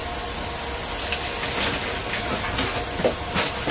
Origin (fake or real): real